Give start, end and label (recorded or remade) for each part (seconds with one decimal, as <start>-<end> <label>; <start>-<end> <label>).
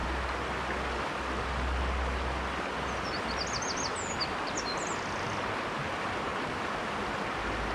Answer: 0.0-7.7 recorded